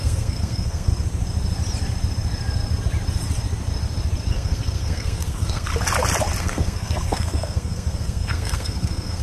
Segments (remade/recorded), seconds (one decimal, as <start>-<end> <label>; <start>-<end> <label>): 0.0-0.9 remade; 0.9-4.3 recorded; 4.3-5.7 remade; 5.7-6.4 recorded; 6.4-9.2 remade